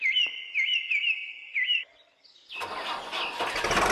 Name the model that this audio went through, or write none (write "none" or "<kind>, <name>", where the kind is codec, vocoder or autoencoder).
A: none